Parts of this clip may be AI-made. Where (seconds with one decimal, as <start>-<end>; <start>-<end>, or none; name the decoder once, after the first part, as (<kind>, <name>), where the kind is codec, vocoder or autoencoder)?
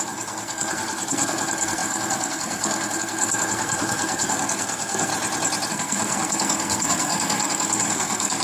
0.0-5.1 (codec, SNAC); 5.7-8.4